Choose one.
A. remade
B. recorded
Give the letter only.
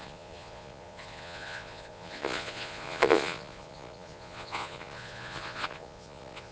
A